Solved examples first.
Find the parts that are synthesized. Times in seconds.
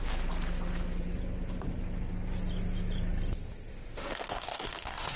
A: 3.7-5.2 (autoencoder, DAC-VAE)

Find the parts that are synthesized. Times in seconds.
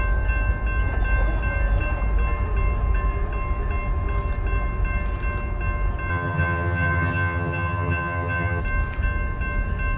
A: 6.1-8.6 (vocoder, HiFi-GAN)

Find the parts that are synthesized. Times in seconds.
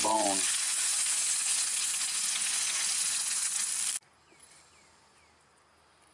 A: 0.0-3.7 (vocoder, Vocos)